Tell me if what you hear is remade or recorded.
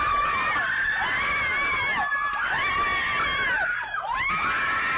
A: recorded